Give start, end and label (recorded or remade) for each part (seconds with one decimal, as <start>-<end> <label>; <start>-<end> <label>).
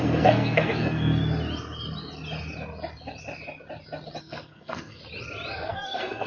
0.0-1.2 remade; 1.2-4.2 recorded; 4.2-5.0 remade; 5.0-5.7 recorded; 5.7-6.3 remade